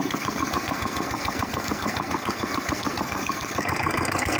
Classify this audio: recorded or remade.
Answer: remade